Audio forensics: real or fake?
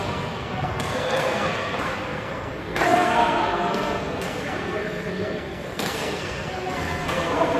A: fake